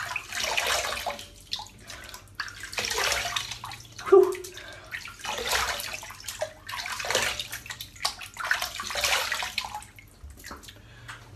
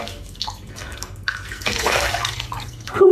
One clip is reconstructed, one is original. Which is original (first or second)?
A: first